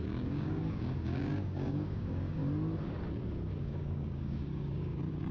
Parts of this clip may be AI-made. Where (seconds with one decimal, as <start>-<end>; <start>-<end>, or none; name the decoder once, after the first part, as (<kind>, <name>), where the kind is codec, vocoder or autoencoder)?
0.0-2.4 (codec, DAC); 3.6-5.3